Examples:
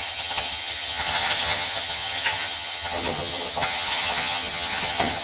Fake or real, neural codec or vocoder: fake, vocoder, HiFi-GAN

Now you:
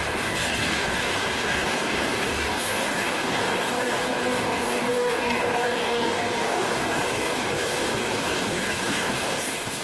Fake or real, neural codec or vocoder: fake, codec, DAC